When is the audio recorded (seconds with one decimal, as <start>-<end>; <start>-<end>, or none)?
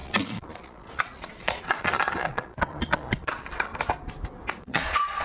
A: 3.7-4.6